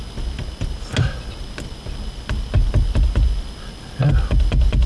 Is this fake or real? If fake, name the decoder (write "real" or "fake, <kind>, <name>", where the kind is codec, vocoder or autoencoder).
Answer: real